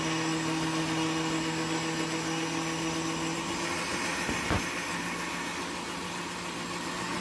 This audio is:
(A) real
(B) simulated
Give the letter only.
A